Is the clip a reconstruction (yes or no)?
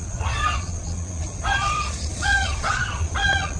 yes